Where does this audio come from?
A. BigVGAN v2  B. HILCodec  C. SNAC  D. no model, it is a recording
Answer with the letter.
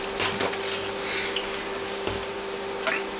D